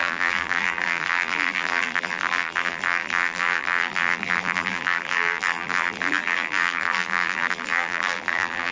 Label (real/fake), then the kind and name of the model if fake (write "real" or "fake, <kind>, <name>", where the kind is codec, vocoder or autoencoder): fake, vocoder, BigVGAN v2